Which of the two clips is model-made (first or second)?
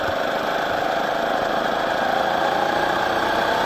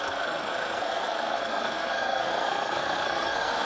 second